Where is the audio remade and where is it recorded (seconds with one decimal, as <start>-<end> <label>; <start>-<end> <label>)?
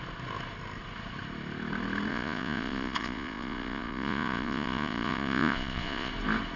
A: 0.0-2.1 recorded; 2.1-6.1 remade; 6.1-6.6 recorded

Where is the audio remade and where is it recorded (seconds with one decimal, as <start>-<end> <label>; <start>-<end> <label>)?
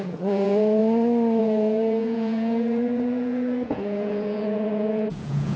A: 0.0-0.8 remade; 0.8-1.4 recorded; 1.4-5.6 remade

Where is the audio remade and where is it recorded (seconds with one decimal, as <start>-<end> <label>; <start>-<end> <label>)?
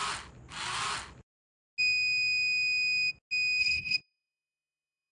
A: 0.0-3.6 recorded; 3.6-5.1 remade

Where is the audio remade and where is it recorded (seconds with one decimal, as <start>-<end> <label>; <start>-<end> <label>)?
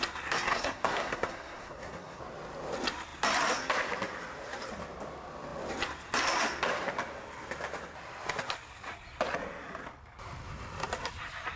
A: 0.0-0.5 recorded; 0.5-2.2 remade; 2.2-11.6 recorded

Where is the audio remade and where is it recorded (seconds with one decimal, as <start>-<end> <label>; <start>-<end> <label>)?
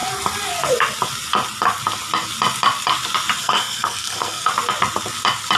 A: 0.0-3.4 recorded; 3.4-4.5 remade; 4.5-5.6 recorded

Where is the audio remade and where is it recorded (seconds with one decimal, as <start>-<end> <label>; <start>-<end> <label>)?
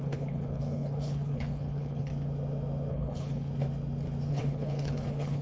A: 0.0-2.1 remade; 2.1-2.9 recorded; 2.9-3.5 remade; 3.5-4.3 recorded; 4.3-5.4 remade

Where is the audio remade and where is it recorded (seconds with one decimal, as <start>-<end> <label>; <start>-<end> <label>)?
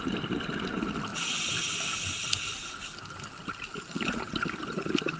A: 0.0-5.2 recorded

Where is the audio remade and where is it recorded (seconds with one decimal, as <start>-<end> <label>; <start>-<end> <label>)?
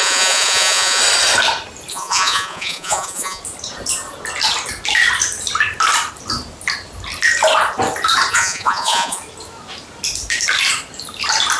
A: 0.0-1.0 remade; 1.0-1.9 recorded; 1.9-3.4 remade; 3.4-8.3 recorded; 8.3-9.2 remade; 9.2-11.6 recorded